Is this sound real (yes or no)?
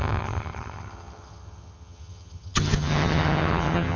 no